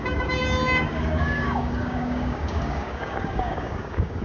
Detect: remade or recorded remade